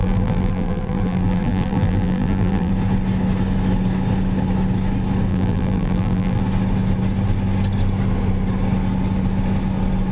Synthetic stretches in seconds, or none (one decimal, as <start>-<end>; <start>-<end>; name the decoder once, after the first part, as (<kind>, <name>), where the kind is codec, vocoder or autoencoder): 0.0-2.7 (vocoder, BigVGAN v2); 5.3-6.4